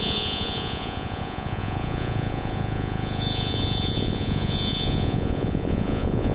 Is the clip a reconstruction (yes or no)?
yes